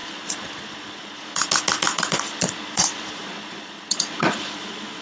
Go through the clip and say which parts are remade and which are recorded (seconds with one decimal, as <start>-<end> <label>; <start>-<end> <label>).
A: 0.0-1.5 remade; 1.5-1.9 recorded; 1.9-5.0 remade